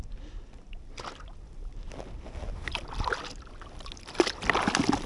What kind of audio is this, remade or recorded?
recorded